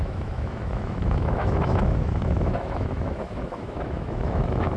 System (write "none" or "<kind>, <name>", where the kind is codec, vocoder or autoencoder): autoencoder, DAC-VAE